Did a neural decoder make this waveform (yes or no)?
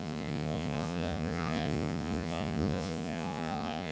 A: yes